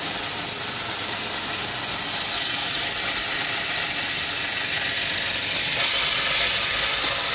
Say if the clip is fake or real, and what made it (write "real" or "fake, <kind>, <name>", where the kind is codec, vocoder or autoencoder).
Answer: real